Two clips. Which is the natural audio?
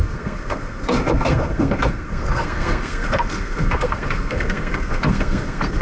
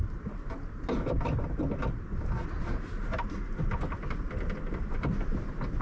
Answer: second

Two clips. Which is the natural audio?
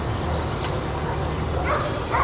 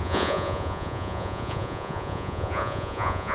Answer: first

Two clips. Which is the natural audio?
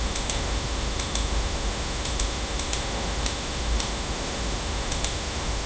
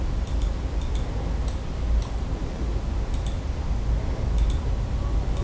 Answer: second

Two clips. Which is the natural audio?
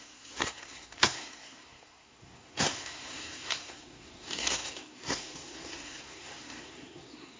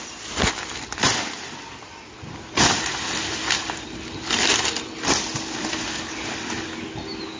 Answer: second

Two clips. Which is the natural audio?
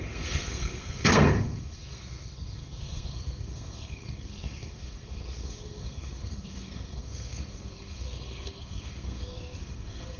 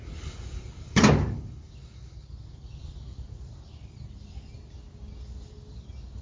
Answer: second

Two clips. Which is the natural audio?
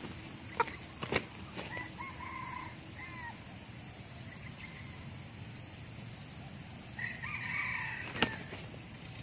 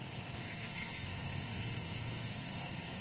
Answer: first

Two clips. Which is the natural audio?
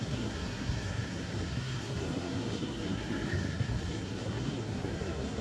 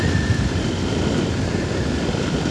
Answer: second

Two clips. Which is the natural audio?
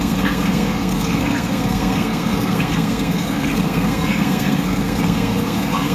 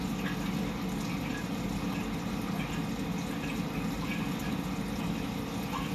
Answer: second